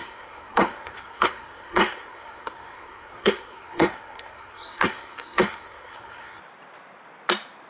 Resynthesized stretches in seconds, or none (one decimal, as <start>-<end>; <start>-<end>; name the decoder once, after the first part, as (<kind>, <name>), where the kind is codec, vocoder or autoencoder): 0.0-6.4 (codec, SNAC)